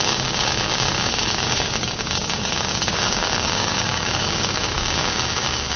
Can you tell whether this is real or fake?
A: fake